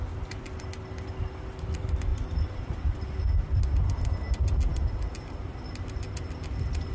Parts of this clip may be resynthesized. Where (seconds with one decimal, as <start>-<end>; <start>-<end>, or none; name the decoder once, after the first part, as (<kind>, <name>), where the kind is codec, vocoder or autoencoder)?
none